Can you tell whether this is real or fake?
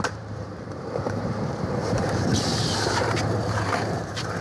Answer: fake